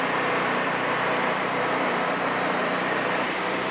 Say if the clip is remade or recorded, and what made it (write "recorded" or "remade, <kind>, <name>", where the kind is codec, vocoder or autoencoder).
remade, vocoder, BigVGAN v2